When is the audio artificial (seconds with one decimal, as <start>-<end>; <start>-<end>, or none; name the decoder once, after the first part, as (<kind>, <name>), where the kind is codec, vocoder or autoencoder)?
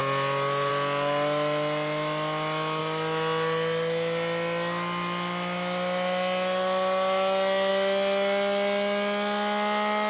none